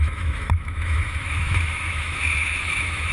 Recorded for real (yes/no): no